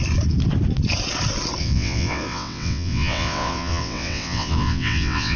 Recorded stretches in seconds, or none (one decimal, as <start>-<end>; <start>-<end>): 0.0-1.6